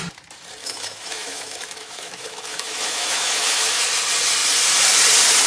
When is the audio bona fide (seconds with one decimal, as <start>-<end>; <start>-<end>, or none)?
0.0-0.6; 3.9-5.5